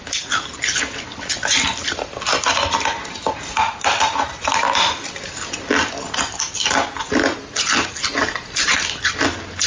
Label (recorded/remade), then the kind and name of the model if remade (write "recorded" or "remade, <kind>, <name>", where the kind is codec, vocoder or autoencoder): recorded